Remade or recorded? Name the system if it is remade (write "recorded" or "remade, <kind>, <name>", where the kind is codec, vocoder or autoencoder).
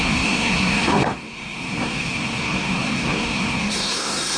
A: remade, codec, SNAC